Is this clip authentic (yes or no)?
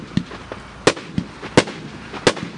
yes